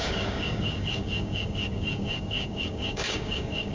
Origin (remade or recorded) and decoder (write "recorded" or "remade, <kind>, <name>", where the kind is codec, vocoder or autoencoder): remade, codec, DAC